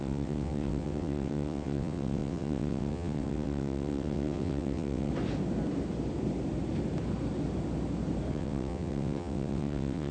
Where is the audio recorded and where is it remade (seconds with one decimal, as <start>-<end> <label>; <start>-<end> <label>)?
0.0-5.1 remade; 5.1-8.3 recorded; 8.3-10.1 remade